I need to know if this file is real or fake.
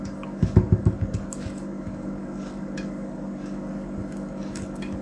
fake